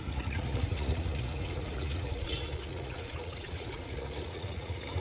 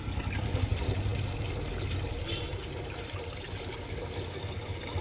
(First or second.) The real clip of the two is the second